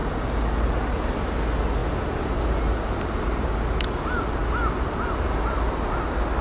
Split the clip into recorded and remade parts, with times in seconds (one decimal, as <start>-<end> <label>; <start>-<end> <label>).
0.0-6.4 recorded

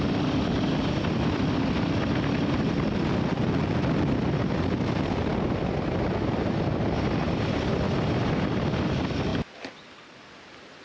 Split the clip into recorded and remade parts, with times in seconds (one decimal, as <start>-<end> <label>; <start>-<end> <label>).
0.0-9.3 recorded; 9.3-10.3 remade; 10.3-10.8 recorded

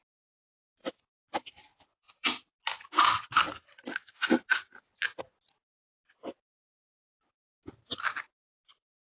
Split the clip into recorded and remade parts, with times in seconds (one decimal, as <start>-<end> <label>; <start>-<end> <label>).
0.0-9.0 recorded

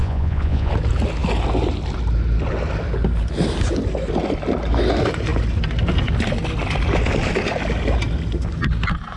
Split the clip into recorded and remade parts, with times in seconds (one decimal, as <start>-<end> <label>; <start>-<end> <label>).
0.0-0.7 remade; 0.7-9.2 recorded

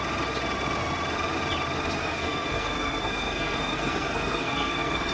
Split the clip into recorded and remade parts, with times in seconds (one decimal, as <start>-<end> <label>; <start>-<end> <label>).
0.0-2.0 recorded; 2.0-5.1 remade